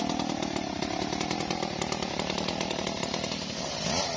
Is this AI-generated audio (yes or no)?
no